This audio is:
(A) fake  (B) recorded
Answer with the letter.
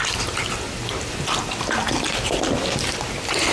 B